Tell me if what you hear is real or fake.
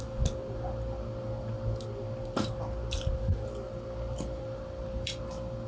real